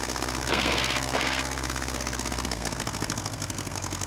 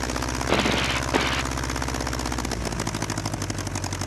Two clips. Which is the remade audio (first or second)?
first